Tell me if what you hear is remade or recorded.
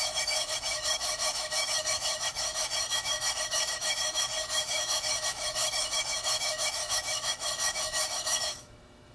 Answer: remade